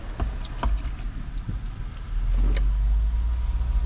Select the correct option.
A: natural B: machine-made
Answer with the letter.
A